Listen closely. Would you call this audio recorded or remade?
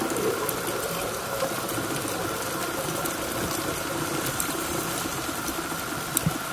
recorded